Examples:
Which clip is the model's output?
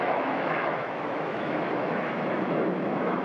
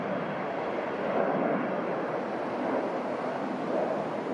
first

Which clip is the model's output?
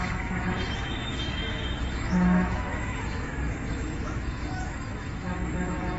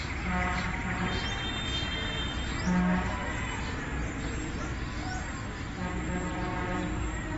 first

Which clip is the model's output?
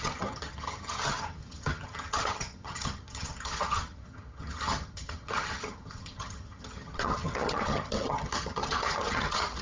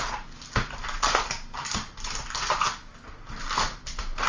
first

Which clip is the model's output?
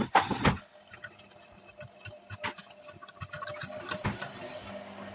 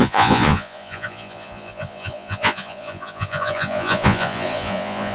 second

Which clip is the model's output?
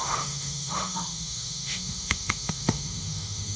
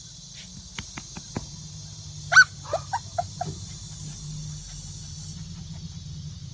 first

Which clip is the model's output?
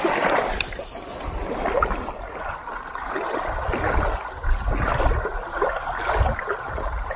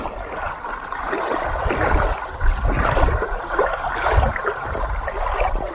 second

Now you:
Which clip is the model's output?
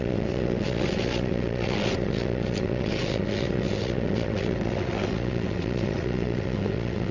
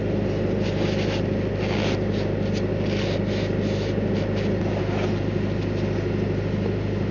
first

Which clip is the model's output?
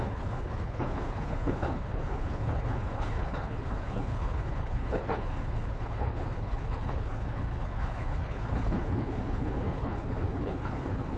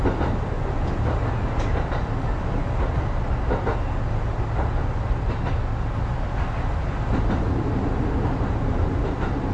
first